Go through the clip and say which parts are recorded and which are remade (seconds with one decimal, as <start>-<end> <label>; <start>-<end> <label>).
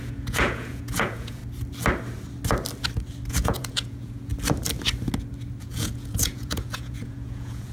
0.0-1.4 remade; 1.4-3.3 recorded; 3.3-4.3 remade; 4.3-5.6 recorded; 5.6-7.7 remade